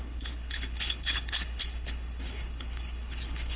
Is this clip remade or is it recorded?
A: remade